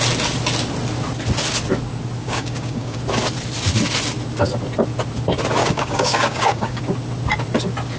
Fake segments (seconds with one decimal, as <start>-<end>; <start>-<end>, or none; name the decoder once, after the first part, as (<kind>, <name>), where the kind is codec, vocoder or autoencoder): 2.2-3.0 (codec, DAC); 5.6-6.8